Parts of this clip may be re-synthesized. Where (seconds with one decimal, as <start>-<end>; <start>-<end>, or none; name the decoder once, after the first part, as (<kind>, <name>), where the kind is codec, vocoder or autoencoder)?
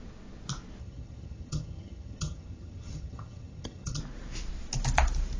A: 0.8-4.0 (vocoder, HiFi-GAN)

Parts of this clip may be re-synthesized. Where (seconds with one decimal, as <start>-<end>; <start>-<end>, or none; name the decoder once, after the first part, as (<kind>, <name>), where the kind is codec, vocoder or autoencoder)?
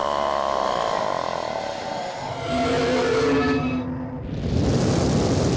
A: none